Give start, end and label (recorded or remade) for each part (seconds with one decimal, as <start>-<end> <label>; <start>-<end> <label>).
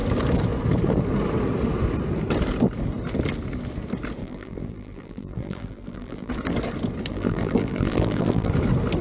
0.0-4.2 recorded; 4.2-6.3 remade; 6.3-7.1 recorded; 7.1-8.5 remade; 8.5-9.0 recorded